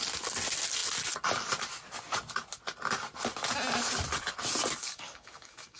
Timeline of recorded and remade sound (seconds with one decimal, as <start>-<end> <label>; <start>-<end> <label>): 0.0-4.8 recorded; 4.8-5.8 remade

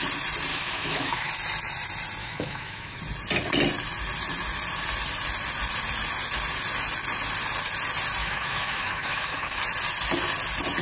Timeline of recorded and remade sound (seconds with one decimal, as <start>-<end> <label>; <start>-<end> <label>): 0.0-0.5 recorded; 0.5-1.3 remade; 1.3-2.2 recorded; 2.2-3.0 remade; 3.0-8.2 recorded; 8.2-9.6 remade; 9.6-10.8 recorded

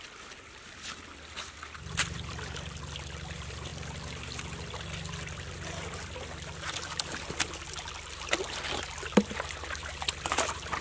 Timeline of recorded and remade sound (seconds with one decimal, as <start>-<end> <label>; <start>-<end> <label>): 0.0-10.8 recorded

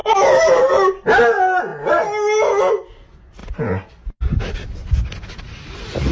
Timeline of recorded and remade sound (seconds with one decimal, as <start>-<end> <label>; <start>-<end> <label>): 0.0-6.1 recorded

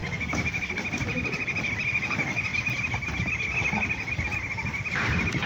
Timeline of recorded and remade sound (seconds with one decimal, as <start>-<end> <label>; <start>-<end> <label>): 0.0-0.7 remade; 0.7-5.5 recorded

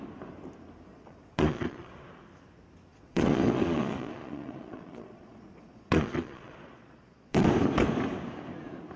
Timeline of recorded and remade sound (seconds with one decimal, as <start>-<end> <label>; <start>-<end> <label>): 0.0-0.9 recorded; 0.9-1.9 remade; 1.9-2.9 recorded; 2.9-7.5 remade; 7.5-9.0 recorded

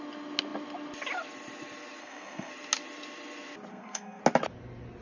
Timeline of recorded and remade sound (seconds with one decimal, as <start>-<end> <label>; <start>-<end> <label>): 0.0-2.0 recorded; 2.0-2.5 remade; 2.5-3.7 recorded; 3.7-4.2 remade; 4.2-5.0 recorded